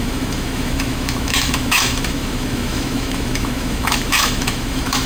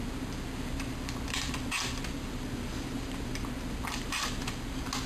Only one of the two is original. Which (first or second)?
second